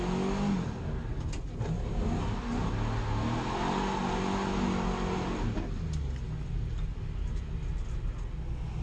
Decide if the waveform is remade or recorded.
recorded